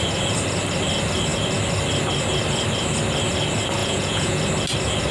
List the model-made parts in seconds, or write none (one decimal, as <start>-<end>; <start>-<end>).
3.8-4.4